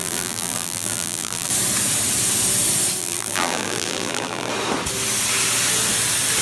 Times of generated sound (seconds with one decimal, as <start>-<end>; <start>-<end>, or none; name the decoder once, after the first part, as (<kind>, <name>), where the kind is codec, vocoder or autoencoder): 0.0-1.5 (vocoder, BigVGAN v2); 3.0-4.5